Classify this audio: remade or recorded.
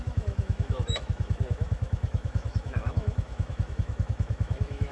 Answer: remade